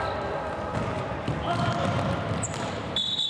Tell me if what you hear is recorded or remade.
recorded